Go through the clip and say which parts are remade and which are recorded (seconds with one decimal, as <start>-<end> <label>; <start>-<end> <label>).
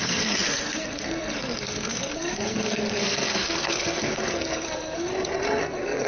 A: 0.0-5.1 remade; 5.1-5.6 recorded; 5.6-6.1 remade